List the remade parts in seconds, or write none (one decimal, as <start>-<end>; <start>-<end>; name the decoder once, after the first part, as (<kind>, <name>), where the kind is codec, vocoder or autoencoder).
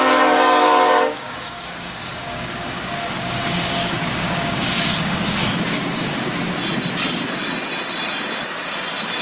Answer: 0.0-6.3 (codec, DAC)